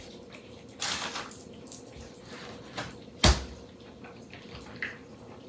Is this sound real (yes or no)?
yes